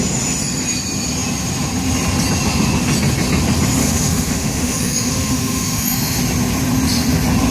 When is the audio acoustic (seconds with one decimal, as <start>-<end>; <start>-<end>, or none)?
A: 0.0-3.8; 6.2-7.5